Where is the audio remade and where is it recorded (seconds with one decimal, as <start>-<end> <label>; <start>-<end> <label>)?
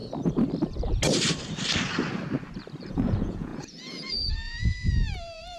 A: 0.0-2.9 recorded; 2.9-5.6 remade